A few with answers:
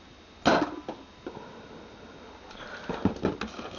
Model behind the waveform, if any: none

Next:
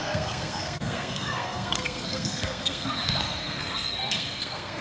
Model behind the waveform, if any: codec, SNAC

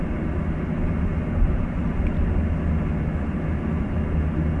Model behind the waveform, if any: none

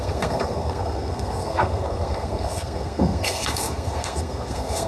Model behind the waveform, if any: codec, SNAC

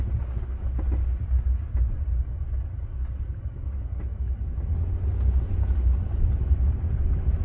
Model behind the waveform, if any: none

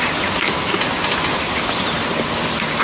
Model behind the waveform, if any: none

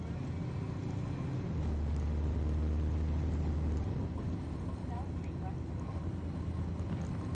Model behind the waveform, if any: none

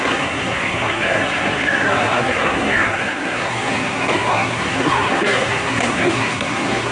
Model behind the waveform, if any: codec, SNAC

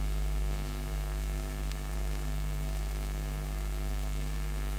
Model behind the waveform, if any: codec, SNAC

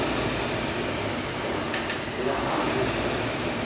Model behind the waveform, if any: none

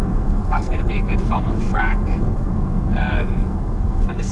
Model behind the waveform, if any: codec, SNAC